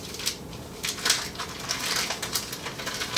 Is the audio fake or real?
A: fake